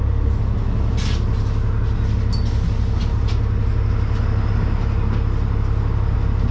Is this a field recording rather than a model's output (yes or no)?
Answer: yes